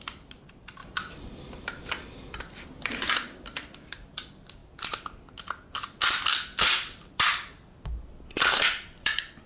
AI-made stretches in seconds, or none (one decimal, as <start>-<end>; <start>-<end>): 0.0-4.6